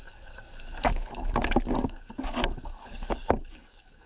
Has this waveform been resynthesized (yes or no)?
yes